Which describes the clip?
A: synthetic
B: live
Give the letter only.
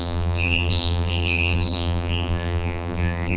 A